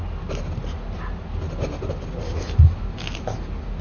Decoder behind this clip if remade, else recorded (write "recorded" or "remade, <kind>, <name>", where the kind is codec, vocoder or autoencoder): recorded